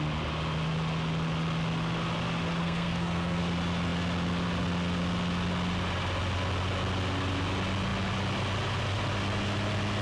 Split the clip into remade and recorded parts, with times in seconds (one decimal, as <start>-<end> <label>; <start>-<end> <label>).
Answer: 0.0-2.6 recorded; 2.6-3.4 remade; 3.4-10.0 recorded